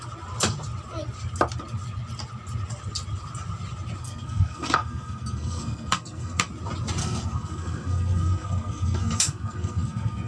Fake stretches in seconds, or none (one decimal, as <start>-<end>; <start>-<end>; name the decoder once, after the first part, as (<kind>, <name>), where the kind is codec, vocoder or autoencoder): 4.0-6.5 (codec, SNAC); 7.0-10.3